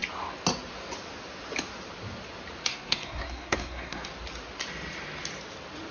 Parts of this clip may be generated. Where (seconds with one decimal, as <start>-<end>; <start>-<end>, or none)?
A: 2.6-4.1